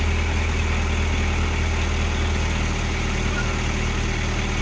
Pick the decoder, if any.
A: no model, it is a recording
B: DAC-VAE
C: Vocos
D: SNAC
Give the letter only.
A